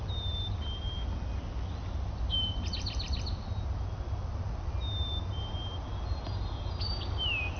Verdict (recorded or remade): recorded